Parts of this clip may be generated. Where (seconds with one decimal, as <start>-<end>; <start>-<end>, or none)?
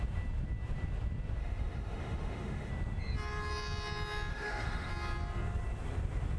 1.4-2.7; 4.3-4.9